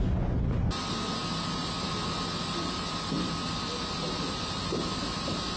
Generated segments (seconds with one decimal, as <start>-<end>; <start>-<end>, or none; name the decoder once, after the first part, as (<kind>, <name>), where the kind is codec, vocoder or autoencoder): none